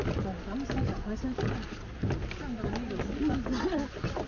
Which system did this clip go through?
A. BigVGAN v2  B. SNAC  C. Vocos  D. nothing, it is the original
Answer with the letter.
D